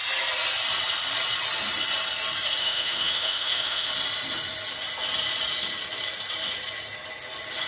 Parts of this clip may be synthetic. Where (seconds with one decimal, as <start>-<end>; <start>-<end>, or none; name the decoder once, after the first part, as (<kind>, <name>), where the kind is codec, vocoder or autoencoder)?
2.6-3.9 (autoencoder, DAC-VAE)